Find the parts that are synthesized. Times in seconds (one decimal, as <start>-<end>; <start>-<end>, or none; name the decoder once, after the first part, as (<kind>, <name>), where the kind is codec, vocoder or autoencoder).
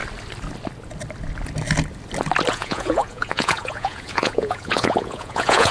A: 2.5-5.7 (vocoder, Vocos)